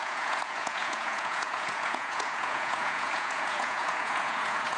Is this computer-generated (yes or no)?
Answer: yes